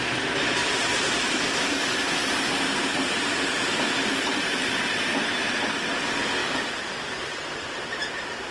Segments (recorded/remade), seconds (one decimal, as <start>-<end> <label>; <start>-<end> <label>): 0.0-0.6 recorded; 0.6-1.4 remade; 1.4-2.2 recorded; 2.2-5.5 remade; 5.5-6.4 recorded; 6.4-8.0 remade; 8.0-8.5 recorded